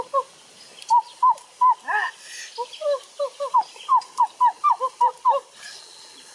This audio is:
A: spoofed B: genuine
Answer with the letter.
B